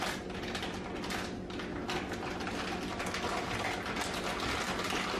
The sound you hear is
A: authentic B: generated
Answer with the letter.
A